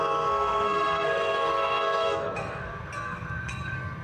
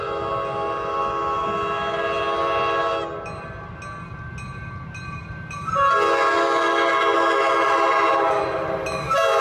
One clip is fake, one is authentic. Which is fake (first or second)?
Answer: first